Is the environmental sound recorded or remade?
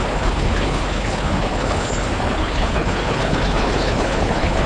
remade